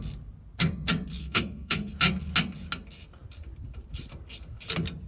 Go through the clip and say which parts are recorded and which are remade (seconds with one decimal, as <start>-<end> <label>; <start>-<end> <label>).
0.0-1.2 recorded; 1.2-1.9 remade; 1.9-5.1 recorded